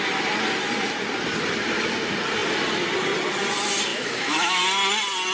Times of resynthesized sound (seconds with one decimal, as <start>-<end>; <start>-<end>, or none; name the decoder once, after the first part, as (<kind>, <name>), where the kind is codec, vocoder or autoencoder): 3.9-4.6 (autoencoder, DAC-VAE)